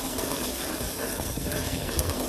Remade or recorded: remade